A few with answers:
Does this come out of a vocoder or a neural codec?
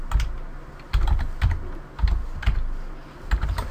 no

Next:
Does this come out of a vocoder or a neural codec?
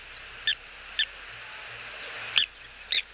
no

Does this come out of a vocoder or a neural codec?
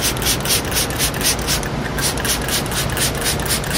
no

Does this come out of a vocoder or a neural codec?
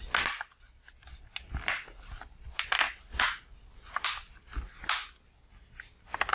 no